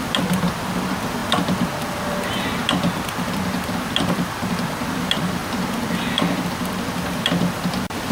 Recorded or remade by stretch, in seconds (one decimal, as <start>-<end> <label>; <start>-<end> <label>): 0.0-5.4 remade; 5.4-6.0 recorded; 6.0-8.1 remade